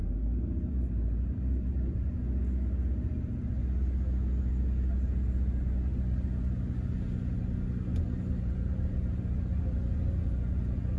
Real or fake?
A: real